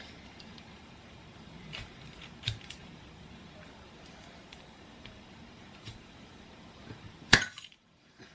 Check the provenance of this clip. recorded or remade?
remade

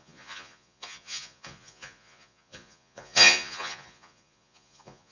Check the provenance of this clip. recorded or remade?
remade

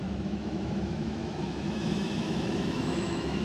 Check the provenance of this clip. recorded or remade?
remade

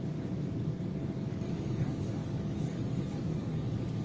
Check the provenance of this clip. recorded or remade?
remade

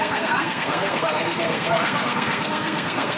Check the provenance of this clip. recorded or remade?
remade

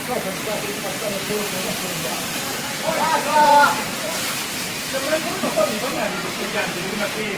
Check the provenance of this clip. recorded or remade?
remade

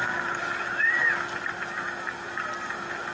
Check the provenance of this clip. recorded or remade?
recorded